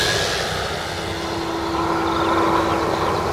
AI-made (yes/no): no